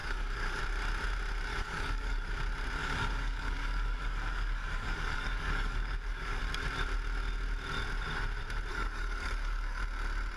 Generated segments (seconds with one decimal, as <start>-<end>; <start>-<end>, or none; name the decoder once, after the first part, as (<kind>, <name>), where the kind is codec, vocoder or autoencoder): 0.0-0.6 (codec, DAC); 1.5-2.3; 2.8-6.4; 8.7-9.8